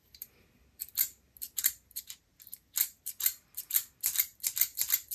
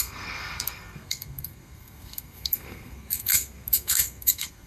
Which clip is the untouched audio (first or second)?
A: first